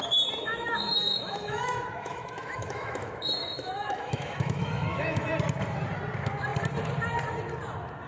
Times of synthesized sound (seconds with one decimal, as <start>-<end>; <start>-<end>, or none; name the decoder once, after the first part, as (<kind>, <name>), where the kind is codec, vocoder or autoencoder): 0.4-5.3 (autoencoder, DAC-VAE)